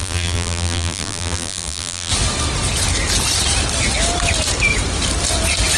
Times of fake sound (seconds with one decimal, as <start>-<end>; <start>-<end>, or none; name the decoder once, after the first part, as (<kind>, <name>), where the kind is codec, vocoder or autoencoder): 0.0-2.1 (vocoder, BigVGAN v2)